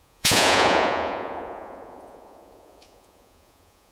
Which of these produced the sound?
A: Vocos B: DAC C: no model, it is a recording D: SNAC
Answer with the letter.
A